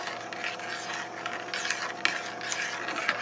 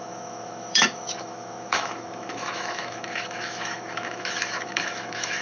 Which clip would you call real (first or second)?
first